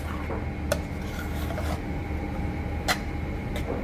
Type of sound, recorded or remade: recorded